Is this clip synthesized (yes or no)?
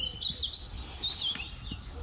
no